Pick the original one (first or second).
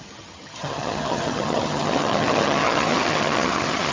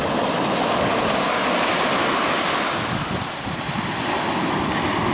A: second